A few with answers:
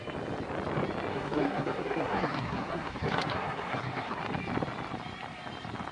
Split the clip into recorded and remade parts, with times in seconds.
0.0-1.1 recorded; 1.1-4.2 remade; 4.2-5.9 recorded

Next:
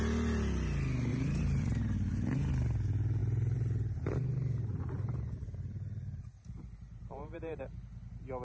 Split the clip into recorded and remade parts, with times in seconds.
0.0-1.1 recorded; 1.1-2.5 remade; 2.5-3.2 recorded; 3.2-7.6 remade; 7.6-8.4 recorded

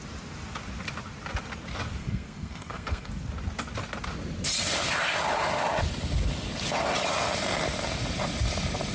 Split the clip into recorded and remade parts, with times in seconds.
0.0-2.0 recorded; 2.0-3.1 remade; 3.1-8.9 recorded